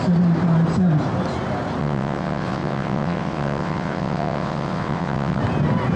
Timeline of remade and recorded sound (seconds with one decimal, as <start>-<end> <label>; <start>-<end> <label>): 0.0-1.8 recorded; 1.8-5.4 remade; 5.4-6.0 recorded